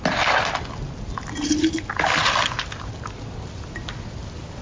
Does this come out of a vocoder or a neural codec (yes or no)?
no